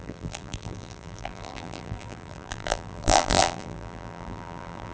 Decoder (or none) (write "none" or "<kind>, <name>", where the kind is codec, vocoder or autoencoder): vocoder, BigVGAN v2